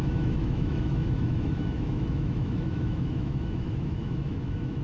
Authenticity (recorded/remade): remade